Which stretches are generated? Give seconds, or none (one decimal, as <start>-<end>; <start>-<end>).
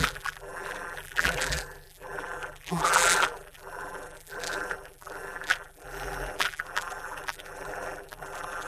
0.0-8.7